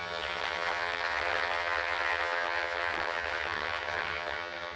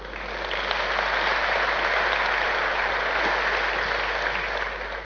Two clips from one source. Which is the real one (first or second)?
second